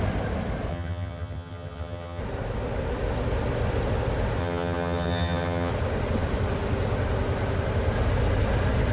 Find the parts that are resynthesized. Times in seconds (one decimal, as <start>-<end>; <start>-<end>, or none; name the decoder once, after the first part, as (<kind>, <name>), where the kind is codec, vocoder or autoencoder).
0.7-2.2 (vocoder, HiFi-GAN); 4.4-5.7